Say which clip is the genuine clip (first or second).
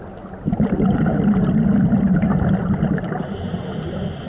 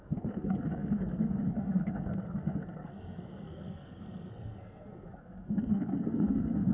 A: first